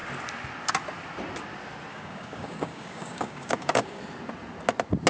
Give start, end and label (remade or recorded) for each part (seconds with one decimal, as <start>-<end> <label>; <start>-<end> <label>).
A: 0.0-1.9 recorded; 1.9-4.0 remade; 4.0-5.1 recorded